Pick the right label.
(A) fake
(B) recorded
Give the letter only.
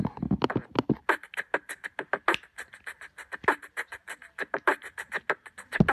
B